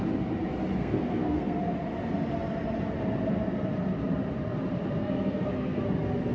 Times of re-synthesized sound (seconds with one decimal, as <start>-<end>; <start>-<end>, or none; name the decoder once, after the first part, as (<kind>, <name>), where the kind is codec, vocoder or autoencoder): 0.8-1.6 (codec, SNAC); 5.0-5.8

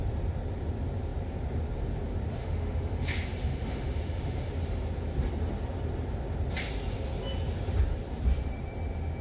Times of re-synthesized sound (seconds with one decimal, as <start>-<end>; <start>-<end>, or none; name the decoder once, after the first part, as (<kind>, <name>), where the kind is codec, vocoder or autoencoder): 2.4-4.5 (autoencoder, DAC-VAE)

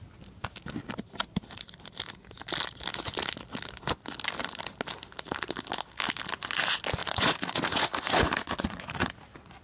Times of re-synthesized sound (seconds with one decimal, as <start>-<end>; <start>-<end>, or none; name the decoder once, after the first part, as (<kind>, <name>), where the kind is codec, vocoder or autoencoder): 7.0-9.6 (vocoder, Vocos)

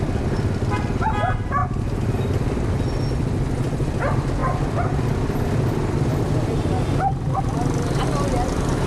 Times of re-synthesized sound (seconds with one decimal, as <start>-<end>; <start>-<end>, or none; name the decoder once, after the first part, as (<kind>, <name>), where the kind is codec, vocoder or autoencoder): none

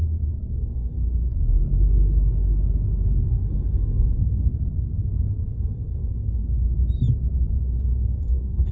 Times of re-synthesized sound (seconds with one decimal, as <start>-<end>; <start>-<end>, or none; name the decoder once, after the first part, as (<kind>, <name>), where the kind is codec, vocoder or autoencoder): 0.5-1.0 (codec, SNAC); 3.3-4.5; 5.5-6.4; 8.0-8.7

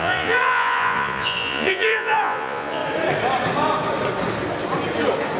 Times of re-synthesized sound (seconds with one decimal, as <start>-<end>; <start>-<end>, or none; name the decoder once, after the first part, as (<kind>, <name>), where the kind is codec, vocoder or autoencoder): 0.0-2.8 (vocoder, Vocos)

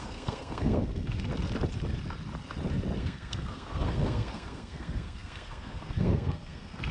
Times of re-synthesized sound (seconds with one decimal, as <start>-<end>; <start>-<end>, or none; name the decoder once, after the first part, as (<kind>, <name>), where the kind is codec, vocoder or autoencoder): 0.0-1.3 (codec, SNAC); 3.0-6.9